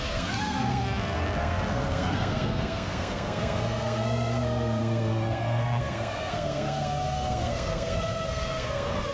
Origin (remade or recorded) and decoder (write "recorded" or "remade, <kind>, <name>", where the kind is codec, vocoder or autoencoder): remade, codec, SNAC